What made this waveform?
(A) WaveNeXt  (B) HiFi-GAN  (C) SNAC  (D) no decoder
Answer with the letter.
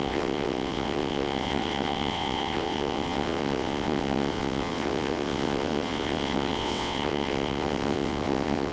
A